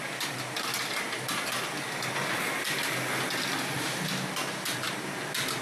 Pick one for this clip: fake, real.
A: real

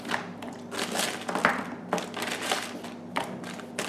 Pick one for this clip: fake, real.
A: real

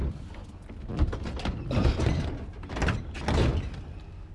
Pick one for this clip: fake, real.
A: real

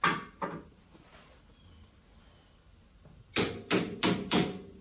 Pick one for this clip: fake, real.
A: real